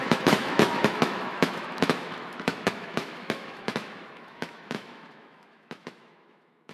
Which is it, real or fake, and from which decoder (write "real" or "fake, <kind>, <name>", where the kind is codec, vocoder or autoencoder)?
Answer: fake, autoencoder, DAC-VAE